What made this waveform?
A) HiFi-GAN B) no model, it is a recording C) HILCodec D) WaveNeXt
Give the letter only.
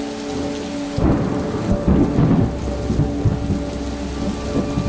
B